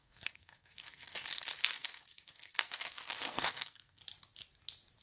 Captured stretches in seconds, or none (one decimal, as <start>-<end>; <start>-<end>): 4.0-5.0